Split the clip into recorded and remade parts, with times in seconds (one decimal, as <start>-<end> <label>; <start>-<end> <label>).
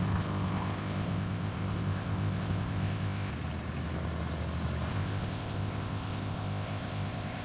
0.0-3.3 remade; 3.3-4.9 recorded; 4.9-7.4 remade